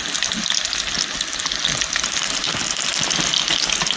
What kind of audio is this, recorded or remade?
recorded